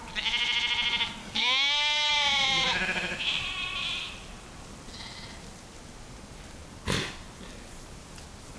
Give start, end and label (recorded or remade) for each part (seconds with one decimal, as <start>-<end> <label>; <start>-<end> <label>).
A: 0.0-1.2 recorded; 1.2-2.1 remade; 2.1-8.6 recorded